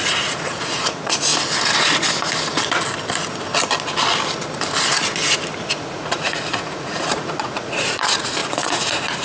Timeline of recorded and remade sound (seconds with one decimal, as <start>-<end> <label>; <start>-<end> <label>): 0.0-1.3 remade; 1.3-5.7 recorded; 5.7-9.2 remade